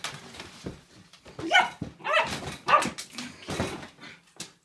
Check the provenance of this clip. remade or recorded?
recorded